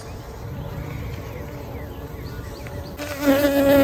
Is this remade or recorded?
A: recorded